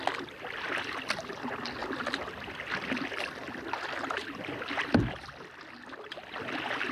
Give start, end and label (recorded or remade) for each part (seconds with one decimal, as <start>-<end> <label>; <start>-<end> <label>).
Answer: 0.0-6.9 recorded

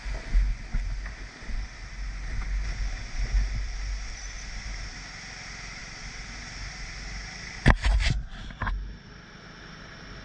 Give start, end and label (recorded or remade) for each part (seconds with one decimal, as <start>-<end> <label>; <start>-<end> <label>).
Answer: 0.0-10.2 recorded